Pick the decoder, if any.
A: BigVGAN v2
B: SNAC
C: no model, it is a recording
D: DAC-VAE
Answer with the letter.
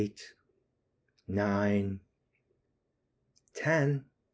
C